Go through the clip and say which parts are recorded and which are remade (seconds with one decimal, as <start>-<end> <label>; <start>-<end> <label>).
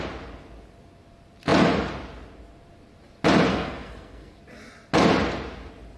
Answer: 0.0-3.5 recorded; 3.5-4.4 remade; 4.4-6.0 recorded